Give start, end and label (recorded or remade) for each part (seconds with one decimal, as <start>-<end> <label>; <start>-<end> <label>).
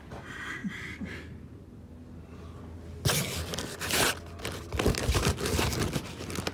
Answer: 0.0-6.5 recorded